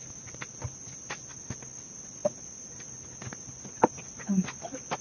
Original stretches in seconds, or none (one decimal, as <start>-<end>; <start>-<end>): 0.0-5.0